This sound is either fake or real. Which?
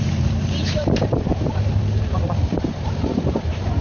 fake